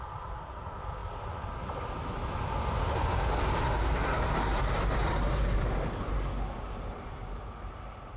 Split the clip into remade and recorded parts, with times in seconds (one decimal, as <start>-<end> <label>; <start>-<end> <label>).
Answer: 0.0-1.0 remade; 1.0-3.9 recorded; 3.9-8.2 remade